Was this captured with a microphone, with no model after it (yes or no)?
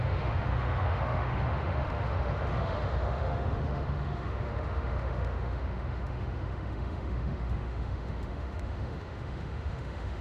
no